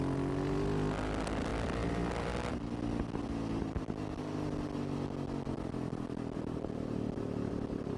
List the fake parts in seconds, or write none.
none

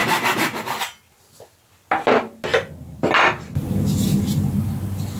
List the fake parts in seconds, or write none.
none

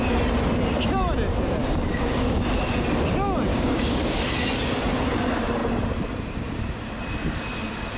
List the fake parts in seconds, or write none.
1.6-2.4 (codec, DAC); 3.5-4.2

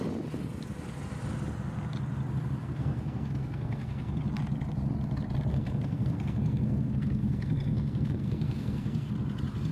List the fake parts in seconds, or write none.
2.6-4.1 (codec, SNAC); 5.5-9.1